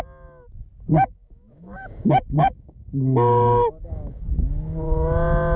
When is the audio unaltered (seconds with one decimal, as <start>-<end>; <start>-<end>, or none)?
0.0-0.9; 4.3-5.6